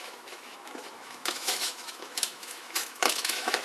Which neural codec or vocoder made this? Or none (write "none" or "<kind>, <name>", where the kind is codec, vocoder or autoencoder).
autoencoder, DAC-VAE